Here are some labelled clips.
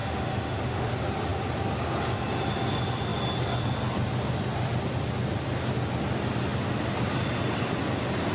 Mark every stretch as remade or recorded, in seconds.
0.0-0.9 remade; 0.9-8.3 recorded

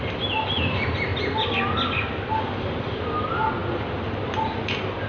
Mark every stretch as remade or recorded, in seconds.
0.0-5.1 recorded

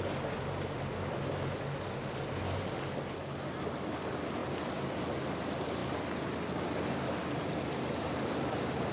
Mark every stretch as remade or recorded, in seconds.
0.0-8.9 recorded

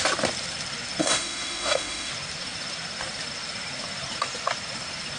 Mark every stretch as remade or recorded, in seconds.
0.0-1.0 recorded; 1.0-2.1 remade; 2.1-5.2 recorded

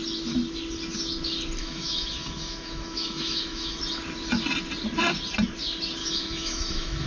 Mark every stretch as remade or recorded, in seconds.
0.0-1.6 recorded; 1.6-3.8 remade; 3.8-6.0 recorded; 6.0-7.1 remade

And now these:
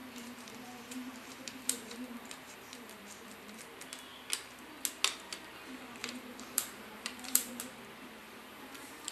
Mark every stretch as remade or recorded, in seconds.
0.0-3.5 remade; 3.5-6.0 recorded; 6.0-7.6 remade; 7.6-8.2 recorded; 8.2-9.1 remade

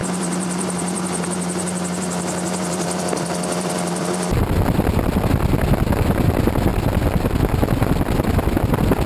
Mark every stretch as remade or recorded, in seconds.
0.0-5.2 remade; 5.2-9.1 recorded

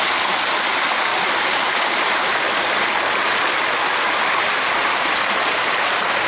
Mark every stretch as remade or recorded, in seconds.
0.0-1.1 recorded; 1.1-2.8 remade; 2.8-6.3 recorded